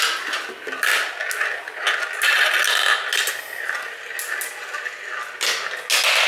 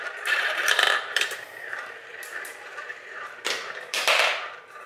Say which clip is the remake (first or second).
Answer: second